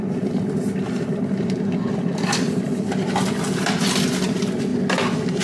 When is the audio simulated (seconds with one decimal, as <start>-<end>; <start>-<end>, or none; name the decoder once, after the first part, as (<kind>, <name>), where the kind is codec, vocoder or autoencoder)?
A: none